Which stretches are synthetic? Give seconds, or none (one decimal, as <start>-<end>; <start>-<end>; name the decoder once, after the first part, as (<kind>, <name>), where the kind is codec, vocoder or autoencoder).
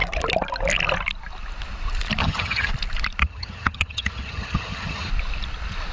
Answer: 2.2-2.7 (vocoder, HiFi-GAN); 3.2-5.1